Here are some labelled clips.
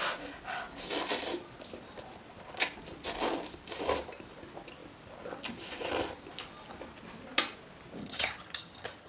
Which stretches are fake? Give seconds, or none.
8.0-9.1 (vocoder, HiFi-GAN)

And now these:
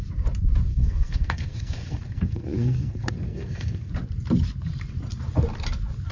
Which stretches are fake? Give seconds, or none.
0.7-3.9 (codec, SNAC)

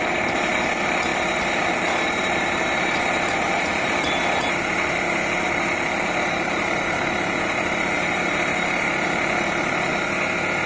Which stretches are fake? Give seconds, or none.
0.0-9.9 (vocoder, BigVGAN v2)

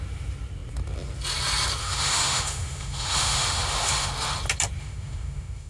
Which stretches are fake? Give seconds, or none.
1.8-4.1 (autoencoder, DAC-VAE); 4.8-5.7

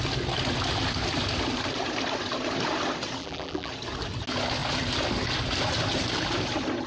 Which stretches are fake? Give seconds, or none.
3.2-3.7 (vocoder, BigVGAN v2)

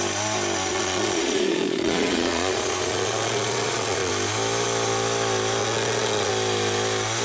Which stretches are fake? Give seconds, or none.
0.7-4.1 (vocoder, Vocos); 5.6-6.3

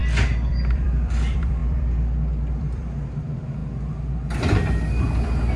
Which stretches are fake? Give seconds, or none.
0.5-3.6 (vocoder, BigVGAN v2); 5.0-5.6